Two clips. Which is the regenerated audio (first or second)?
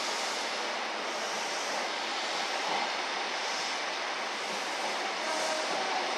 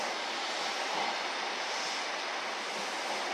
first